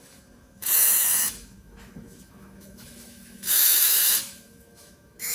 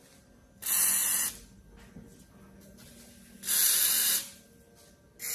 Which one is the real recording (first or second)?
second